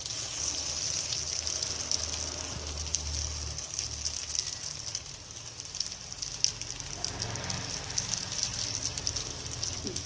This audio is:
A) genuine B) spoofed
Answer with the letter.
A